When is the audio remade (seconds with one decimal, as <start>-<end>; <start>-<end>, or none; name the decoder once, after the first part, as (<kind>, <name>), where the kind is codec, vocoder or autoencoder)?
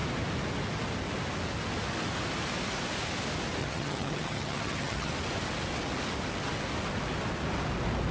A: 3.6-5.1 (vocoder, HiFi-GAN)